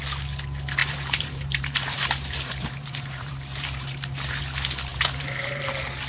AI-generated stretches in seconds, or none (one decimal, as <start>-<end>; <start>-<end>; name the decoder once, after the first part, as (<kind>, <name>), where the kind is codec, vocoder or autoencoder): 0.8-4.4 (vocoder, BigVGAN v2); 4.9-5.6